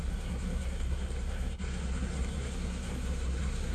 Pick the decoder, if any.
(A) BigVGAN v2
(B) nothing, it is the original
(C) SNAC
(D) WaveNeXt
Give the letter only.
C